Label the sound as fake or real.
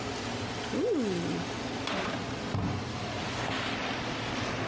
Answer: real